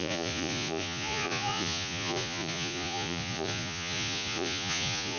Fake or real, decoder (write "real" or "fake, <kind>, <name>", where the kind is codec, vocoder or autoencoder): fake, vocoder, Vocos